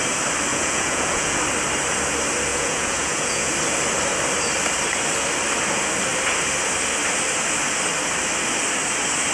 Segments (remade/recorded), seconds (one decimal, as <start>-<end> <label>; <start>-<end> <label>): 0.0-0.5 recorded; 0.5-1.4 remade; 1.4-2.5 recorded; 2.5-3.5 remade; 3.5-9.3 recorded